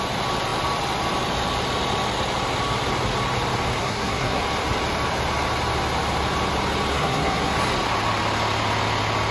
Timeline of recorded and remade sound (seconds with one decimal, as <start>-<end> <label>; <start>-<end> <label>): 0.0-3.8 recorded; 3.8-4.4 remade; 4.4-6.9 recorded; 6.9-7.5 remade; 7.5-9.3 recorded